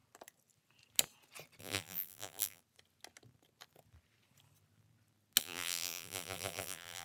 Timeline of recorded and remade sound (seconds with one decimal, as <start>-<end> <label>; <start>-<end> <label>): 0.0-1.6 recorded; 1.6-2.6 remade; 2.6-5.4 recorded; 5.4-7.0 remade